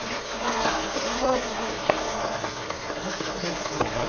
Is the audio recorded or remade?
remade